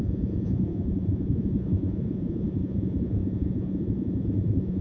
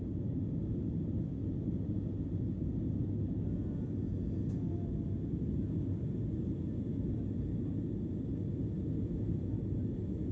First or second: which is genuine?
second